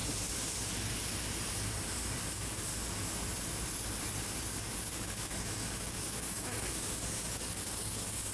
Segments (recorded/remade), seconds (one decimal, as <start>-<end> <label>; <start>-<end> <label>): 0.0-2.3 recorded; 2.3-2.7 remade; 2.7-4.5 recorded; 4.5-8.3 remade